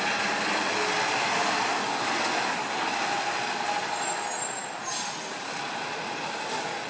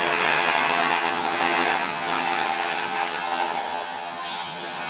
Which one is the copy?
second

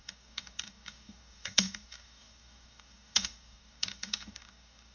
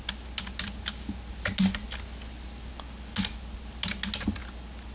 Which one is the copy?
first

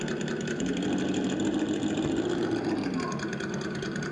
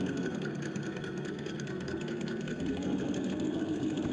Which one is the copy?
second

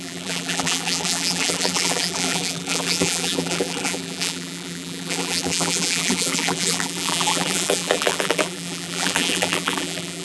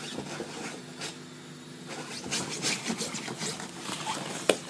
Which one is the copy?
first